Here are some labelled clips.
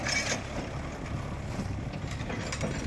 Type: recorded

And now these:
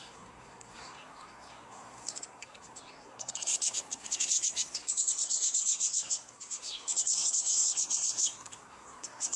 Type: remade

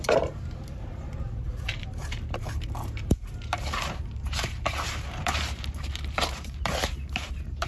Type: remade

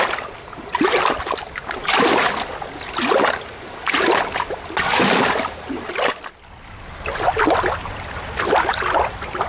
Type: recorded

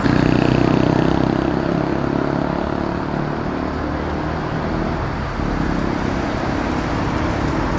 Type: recorded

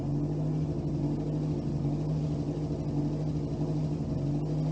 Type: recorded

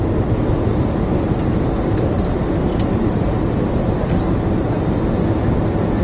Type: recorded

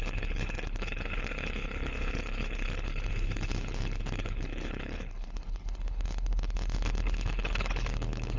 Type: remade